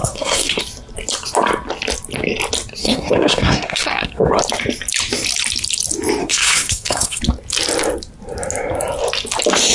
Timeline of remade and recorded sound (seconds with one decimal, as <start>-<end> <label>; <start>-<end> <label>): 0.0-0.6 remade; 0.6-2.8 recorded; 2.8-4.4 remade; 4.4-6.2 recorded; 6.2-7.2 remade; 7.2-9.7 recorded